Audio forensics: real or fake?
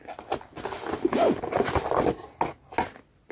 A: real